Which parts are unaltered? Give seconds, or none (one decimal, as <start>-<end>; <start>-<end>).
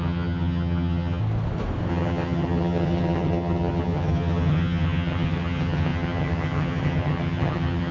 1.2-1.9